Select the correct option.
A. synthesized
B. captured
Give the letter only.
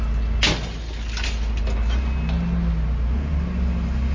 B